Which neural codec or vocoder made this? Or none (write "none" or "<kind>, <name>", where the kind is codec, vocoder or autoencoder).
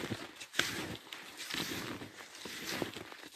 none